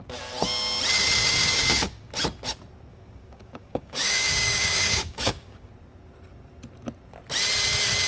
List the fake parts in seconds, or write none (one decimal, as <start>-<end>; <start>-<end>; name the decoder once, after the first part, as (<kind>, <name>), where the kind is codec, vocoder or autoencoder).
1.4-2.1 (codec, DAC); 2.9-5.7